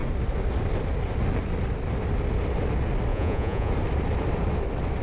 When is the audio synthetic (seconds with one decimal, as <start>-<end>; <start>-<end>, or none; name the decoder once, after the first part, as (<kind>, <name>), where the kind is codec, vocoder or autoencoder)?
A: 3.1-3.7 (vocoder, Vocos)